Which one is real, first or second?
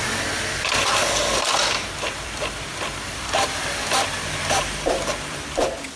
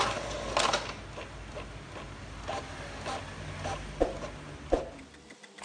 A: second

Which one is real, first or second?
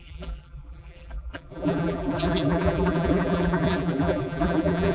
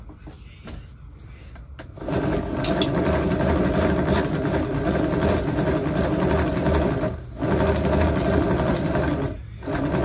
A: second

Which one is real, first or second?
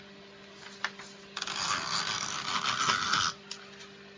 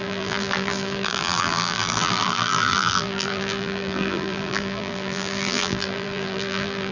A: first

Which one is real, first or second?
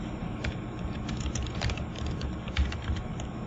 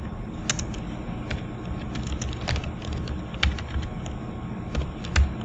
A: second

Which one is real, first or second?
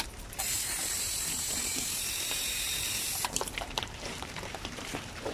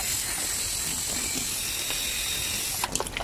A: second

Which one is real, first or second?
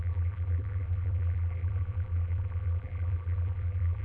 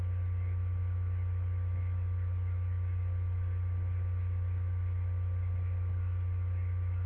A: second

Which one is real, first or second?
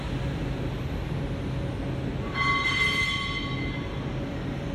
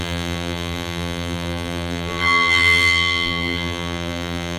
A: first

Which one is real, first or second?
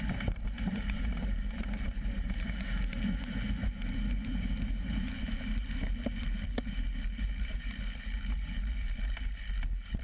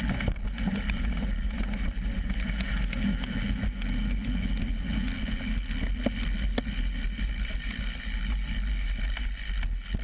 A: second